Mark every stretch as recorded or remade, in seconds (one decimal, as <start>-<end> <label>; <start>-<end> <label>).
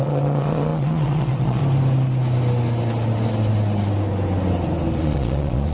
0.0-1.6 remade; 1.6-5.0 recorded; 5.0-5.7 remade